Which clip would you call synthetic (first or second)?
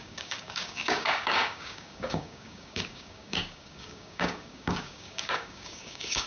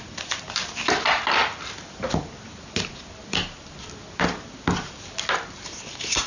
first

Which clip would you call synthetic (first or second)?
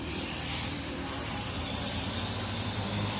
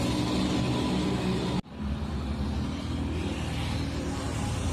first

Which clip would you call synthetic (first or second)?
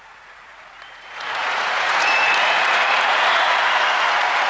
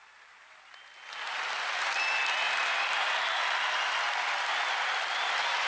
first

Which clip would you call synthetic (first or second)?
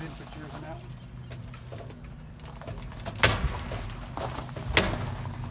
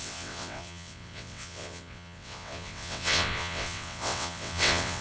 second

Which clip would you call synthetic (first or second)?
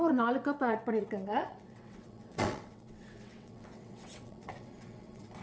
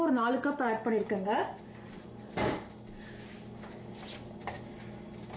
first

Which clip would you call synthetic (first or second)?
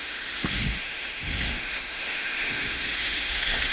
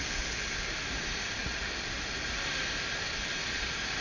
first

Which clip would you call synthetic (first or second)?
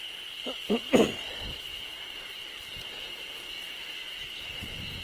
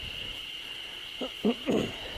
second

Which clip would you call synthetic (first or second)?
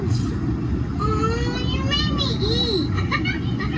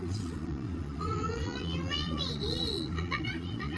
second